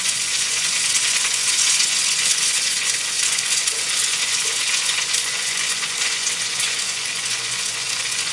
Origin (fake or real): fake